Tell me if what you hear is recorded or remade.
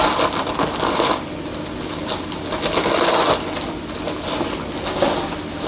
recorded